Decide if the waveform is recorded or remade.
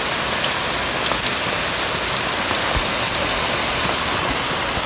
recorded